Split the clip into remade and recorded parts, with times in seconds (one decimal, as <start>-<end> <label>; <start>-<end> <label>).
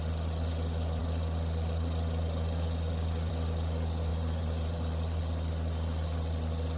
0.0-4.1 recorded; 4.1-5.2 remade; 5.2-6.8 recorded